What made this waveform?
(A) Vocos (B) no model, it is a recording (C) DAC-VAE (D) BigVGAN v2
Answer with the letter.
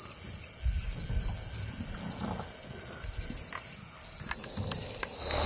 B